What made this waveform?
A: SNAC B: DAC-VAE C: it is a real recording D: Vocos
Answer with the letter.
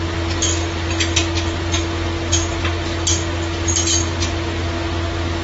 C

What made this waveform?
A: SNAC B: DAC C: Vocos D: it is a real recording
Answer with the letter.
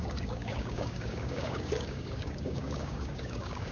B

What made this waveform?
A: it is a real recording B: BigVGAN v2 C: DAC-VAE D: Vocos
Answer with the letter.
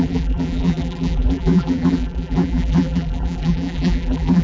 B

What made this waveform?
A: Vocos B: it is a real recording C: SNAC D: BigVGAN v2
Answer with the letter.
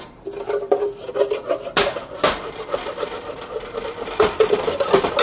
B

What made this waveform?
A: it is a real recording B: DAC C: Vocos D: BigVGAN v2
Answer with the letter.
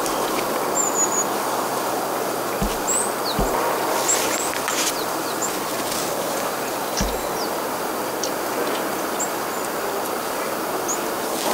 A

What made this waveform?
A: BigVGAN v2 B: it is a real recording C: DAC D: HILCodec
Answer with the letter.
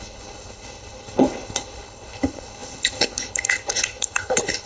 D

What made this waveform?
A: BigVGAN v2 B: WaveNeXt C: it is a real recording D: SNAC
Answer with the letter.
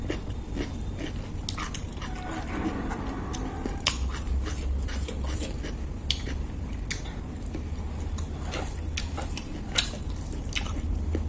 C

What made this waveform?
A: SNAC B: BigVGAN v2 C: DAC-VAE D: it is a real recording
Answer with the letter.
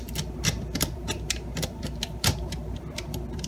B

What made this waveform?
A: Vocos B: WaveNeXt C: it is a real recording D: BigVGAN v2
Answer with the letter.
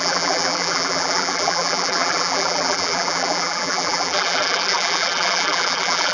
D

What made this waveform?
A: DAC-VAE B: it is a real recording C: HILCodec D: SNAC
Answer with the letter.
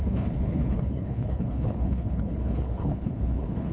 C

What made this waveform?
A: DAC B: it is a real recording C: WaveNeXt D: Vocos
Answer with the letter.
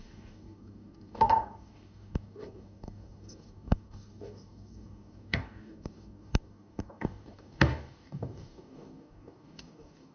A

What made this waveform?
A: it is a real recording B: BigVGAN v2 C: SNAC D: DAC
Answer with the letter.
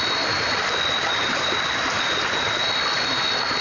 A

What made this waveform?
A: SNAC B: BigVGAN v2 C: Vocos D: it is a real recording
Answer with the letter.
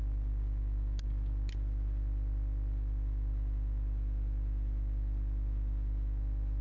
D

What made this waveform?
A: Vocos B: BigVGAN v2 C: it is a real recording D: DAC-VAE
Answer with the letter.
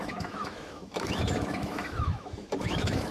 D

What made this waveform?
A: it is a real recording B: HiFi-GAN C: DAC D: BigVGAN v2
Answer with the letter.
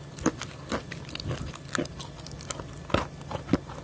A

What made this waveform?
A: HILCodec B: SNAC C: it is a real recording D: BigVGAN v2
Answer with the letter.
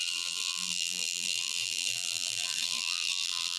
D